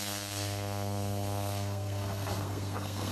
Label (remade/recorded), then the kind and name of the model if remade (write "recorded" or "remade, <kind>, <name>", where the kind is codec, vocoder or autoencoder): remade, codec, SNAC